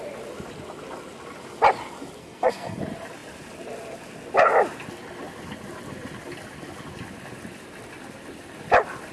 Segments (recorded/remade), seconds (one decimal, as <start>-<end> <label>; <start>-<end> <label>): 0.0-2.2 recorded; 2.2-2.8 remade; 2.8-9.1 recorded